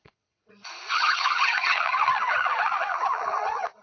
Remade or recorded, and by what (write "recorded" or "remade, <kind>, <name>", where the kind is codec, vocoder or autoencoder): remade, vocoder, WaveNeXt